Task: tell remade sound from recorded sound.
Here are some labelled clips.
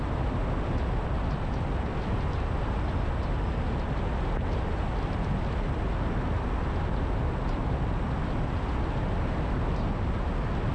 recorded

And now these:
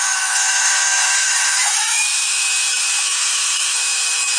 remade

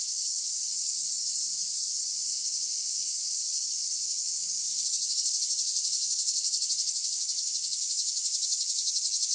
remade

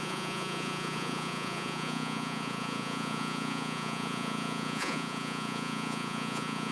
remade